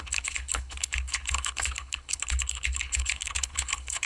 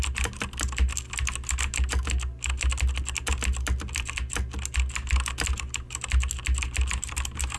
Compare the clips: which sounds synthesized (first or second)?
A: first